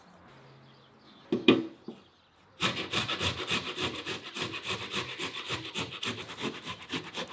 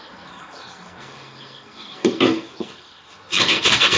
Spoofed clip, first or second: second